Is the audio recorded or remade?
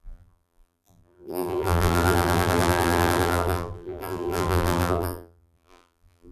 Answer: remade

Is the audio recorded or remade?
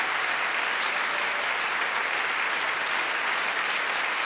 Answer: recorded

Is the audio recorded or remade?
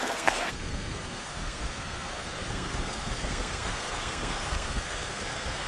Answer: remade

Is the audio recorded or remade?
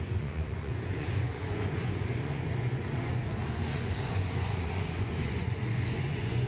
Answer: remade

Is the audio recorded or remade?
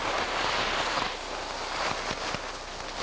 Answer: recorded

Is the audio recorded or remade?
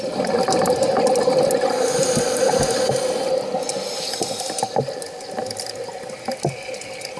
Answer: recorded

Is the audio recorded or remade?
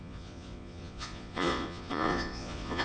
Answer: remade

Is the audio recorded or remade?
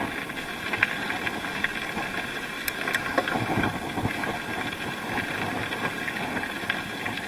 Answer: recorded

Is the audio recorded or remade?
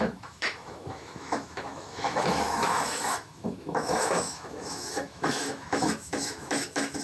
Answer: remade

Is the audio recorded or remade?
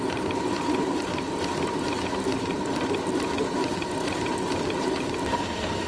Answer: recorded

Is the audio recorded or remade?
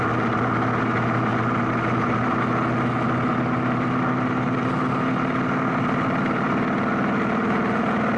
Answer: recorded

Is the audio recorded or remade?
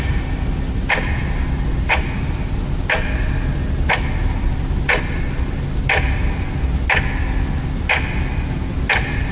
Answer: recorded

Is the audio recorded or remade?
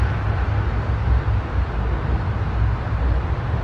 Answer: recorded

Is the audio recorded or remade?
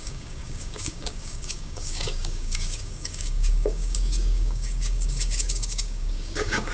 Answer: remade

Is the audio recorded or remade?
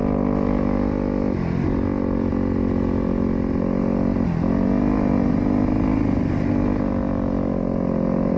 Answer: recorded